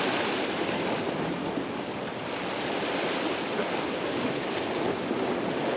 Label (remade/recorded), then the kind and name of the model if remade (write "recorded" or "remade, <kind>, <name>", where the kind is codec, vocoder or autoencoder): recorded